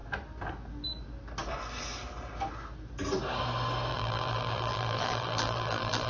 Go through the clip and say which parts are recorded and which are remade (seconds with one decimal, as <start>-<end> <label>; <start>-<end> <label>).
0.0-3.9 recorded; 3.9-6.1 remade